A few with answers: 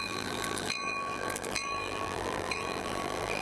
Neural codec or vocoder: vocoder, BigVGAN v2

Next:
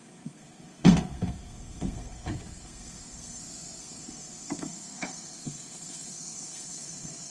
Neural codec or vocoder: codec, SNAC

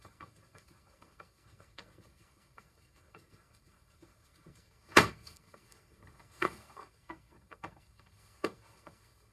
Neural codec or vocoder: codec, SNAC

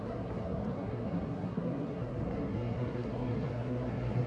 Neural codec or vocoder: codec, SNAC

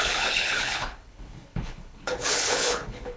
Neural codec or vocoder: codec, HILCodec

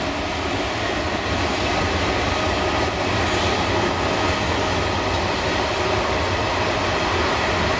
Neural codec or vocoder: none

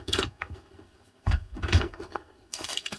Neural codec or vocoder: codec, SNAC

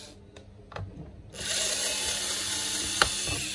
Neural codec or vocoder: none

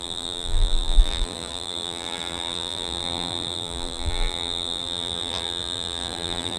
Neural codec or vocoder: vocoder, BigVGAN v2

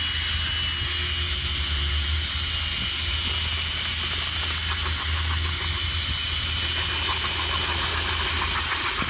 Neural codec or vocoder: none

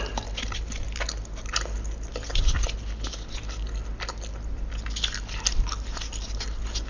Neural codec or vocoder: none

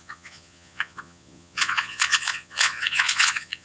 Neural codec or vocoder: vocoder, Vocos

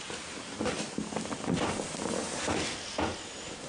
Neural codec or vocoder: none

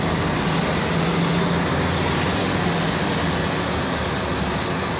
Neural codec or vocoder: none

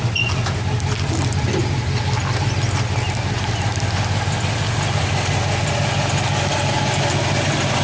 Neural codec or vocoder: none